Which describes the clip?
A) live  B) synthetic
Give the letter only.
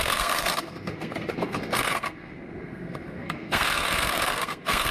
B